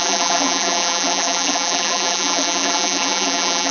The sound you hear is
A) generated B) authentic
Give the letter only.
A